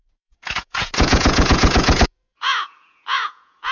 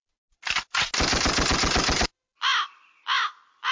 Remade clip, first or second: first